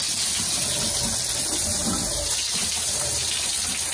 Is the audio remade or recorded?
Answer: recorded